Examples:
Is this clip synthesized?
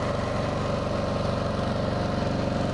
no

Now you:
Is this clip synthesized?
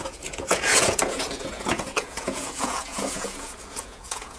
yes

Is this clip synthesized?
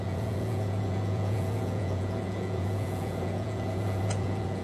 yes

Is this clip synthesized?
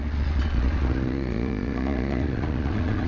yes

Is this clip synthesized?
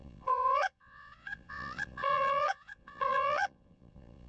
yes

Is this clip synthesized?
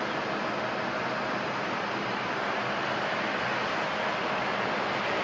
no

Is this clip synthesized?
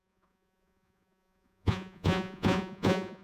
yes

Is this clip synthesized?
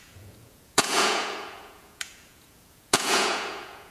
yes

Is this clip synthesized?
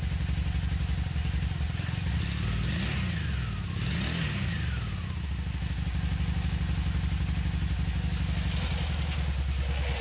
no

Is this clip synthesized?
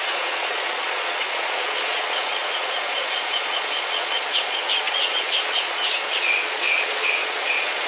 yes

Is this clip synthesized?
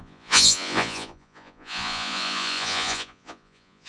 yes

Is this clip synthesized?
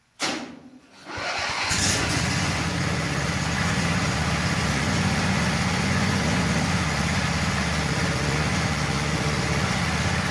yes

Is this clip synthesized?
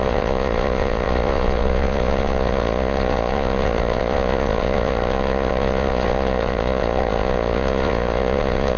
yes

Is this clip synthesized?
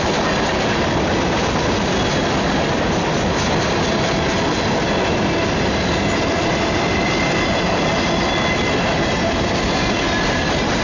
no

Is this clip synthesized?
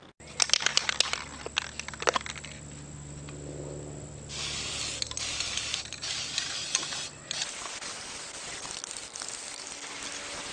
no